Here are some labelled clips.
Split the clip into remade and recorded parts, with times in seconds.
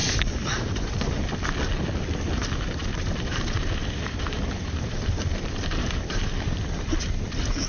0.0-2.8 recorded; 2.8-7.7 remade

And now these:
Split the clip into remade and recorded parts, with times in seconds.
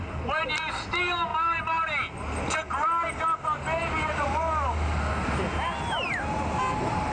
0.0-7.1 recorded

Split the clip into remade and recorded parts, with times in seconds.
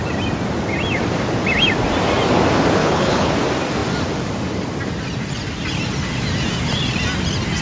0.0-2.8 recorded; 2.8-3.3 remade; 3.3-7.6 recorded